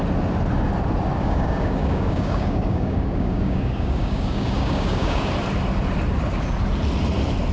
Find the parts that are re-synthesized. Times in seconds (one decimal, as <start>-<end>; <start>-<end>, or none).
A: 1.2-5.3